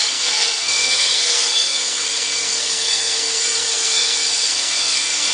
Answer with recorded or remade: remade